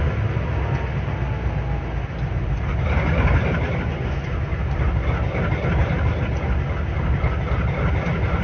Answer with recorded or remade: recorded